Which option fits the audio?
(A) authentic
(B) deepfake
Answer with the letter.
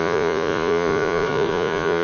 B